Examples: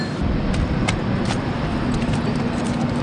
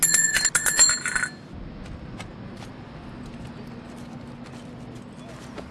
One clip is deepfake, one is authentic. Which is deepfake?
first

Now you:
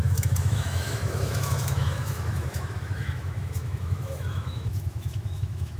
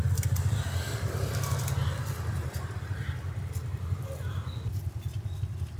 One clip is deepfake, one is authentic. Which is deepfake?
first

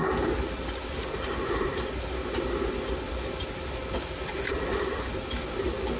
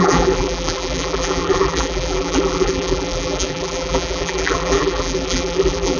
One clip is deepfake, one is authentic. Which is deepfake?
second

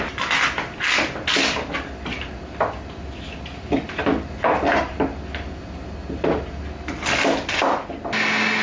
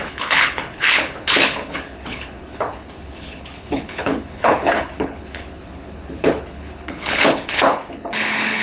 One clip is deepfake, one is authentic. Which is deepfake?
second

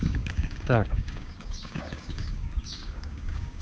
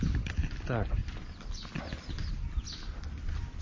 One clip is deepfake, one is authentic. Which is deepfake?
first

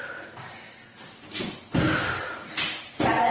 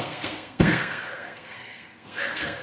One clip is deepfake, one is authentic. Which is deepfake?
second